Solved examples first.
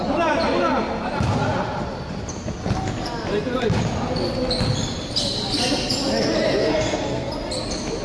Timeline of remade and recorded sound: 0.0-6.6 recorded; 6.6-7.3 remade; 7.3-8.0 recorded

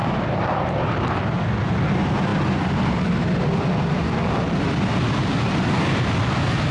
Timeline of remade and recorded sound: 0.0-1.2 remade; 1.2-6.7 recorded